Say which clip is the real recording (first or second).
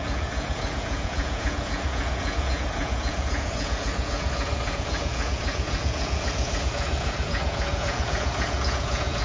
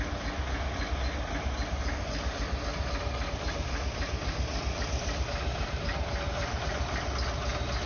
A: second